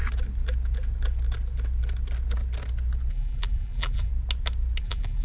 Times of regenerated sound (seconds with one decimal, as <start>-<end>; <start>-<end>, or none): 3.1-4.1; 4.8-5.2